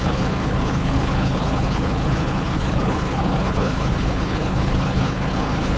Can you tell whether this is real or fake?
fake